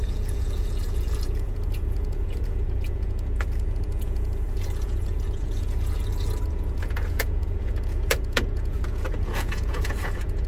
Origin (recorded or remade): remade